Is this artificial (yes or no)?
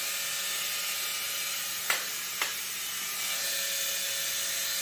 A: no